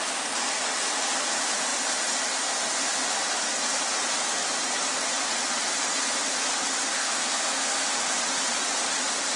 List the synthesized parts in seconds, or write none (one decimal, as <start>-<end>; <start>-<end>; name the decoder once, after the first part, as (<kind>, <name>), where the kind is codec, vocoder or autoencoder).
7.0-7.8 (codec, SNAC)